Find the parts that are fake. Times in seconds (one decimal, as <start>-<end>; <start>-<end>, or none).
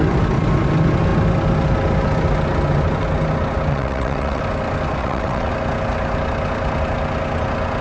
3.7-4.4; 5.0-5.5